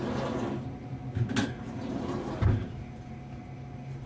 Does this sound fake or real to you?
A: real